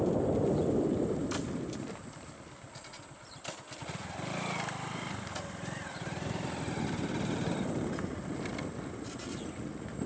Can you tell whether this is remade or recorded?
recorded